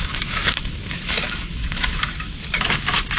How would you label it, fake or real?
fake